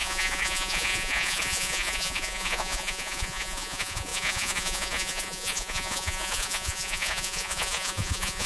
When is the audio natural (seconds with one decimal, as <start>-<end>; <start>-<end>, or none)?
none